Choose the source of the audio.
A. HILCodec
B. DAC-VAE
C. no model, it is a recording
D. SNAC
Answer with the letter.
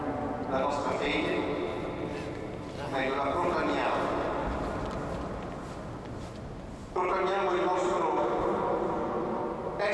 C